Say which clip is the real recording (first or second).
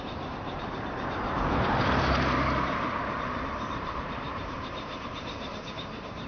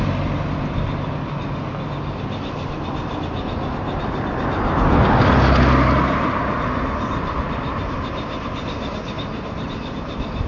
second